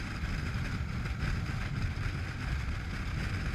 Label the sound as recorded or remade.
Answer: recorded